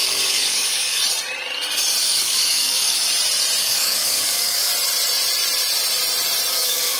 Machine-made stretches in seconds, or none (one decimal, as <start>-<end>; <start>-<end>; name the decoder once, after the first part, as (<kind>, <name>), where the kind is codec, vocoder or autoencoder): 0.0-1.0 (codec, DAC); 2.0-3.0; 3.6-4.7; 6.5-7.0